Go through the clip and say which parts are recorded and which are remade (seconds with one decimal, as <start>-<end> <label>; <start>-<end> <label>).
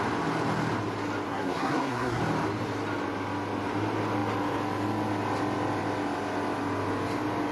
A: 0.0-1.3 recorded; 1.3-2.2 remade; 2.2-7.5 recorded